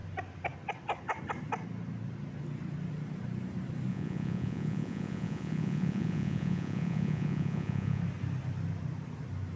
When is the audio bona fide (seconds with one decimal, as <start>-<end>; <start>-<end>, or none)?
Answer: 0.0-3.9; 8.0-9.6